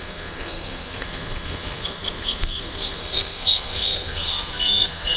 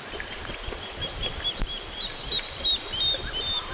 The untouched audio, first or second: second